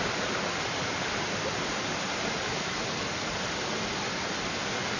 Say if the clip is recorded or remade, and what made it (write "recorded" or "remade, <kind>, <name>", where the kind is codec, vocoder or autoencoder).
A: recorded